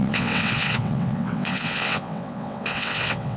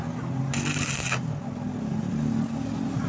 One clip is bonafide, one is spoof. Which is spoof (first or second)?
first